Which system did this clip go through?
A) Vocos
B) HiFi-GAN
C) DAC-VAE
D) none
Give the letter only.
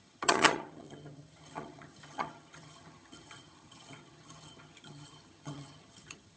B